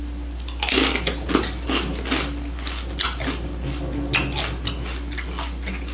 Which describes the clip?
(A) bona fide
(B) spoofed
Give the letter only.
A